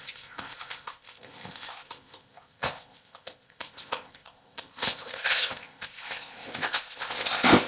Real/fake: fake